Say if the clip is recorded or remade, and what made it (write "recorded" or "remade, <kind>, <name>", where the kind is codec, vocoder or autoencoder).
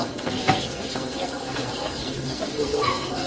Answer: remade, codec, SNAC